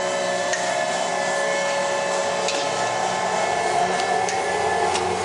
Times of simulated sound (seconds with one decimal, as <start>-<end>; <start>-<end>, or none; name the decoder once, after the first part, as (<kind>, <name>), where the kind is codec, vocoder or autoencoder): none